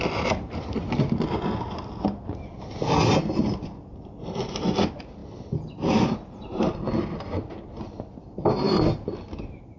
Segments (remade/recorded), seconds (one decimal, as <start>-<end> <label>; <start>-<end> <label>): 0.0-9.8 recorded